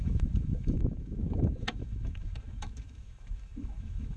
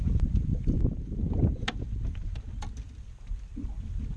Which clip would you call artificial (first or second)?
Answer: first